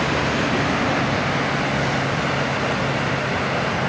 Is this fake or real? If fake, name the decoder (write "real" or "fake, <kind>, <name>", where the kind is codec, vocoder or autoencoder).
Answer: real